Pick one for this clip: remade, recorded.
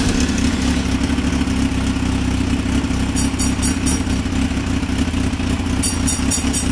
recorded